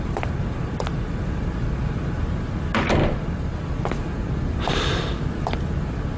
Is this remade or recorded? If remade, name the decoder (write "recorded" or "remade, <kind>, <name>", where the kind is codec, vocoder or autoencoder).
recorded